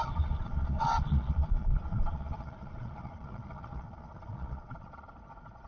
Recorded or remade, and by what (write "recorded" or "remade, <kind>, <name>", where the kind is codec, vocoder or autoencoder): remade, vocoder, Vocos